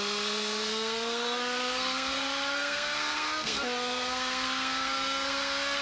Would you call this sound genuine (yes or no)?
no